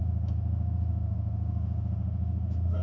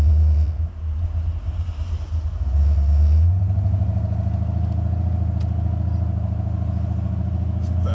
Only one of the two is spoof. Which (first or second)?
first